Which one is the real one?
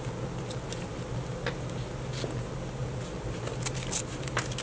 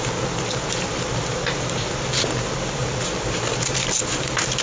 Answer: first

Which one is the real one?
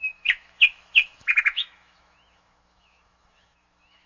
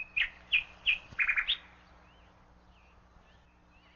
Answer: second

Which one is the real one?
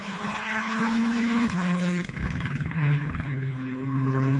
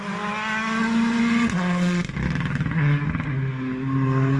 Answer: second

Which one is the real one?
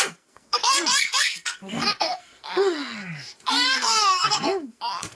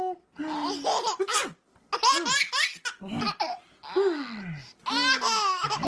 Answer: second